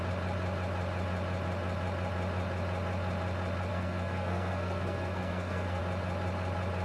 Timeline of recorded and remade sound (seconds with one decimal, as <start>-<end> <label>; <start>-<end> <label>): 0.0-3.7 recorded; 3.7-5.8 remade; 5.8-6.8 recorded